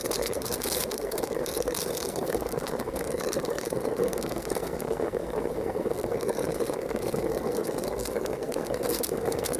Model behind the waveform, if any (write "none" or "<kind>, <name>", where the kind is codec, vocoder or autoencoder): codec, SNAC